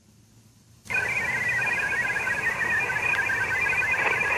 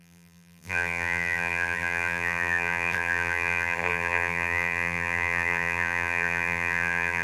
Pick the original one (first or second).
first